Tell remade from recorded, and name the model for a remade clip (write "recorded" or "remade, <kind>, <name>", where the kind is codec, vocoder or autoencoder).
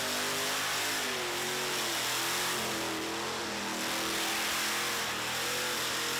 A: recorded